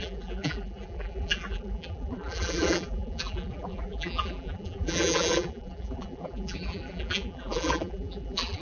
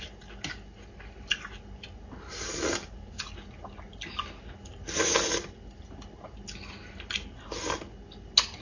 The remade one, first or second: first